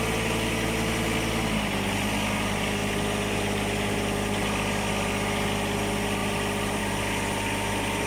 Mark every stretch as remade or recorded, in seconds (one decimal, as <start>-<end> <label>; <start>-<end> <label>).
0.0-8.1 recorded